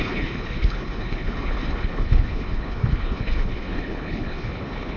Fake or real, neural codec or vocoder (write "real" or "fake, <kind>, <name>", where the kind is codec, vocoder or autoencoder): fake, codec, HILCodec